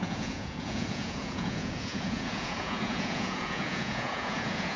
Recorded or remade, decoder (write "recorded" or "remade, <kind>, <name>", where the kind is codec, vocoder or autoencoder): remade, vocoder, Vocos